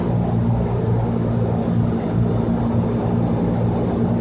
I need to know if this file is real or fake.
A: real